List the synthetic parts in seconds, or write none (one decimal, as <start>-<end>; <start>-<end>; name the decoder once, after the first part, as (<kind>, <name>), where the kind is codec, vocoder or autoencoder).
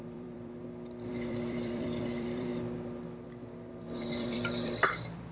0.0-0.6 (vocoder, BigVGAN v2); 1.1-2.5; 3.8-5.3